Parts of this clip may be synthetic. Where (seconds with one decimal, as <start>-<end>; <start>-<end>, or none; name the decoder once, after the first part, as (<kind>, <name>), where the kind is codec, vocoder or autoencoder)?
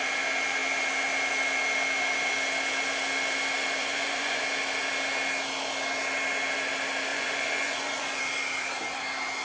3.8-4.4 (vocoder, Vocos); 7.1-8.2